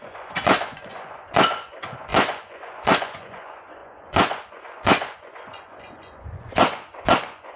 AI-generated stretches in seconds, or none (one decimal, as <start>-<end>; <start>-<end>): 0.0-7.6